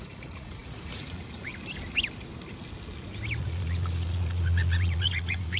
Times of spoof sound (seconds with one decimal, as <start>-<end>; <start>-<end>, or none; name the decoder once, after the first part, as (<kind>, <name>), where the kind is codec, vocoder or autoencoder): 0.0-1.5 (vocoder, Vocos); 3.4-5.6